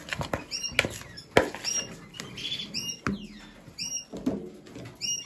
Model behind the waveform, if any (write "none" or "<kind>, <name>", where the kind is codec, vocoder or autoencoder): none